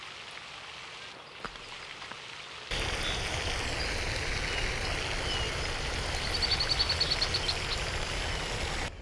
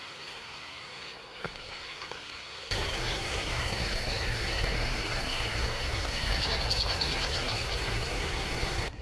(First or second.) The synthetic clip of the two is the second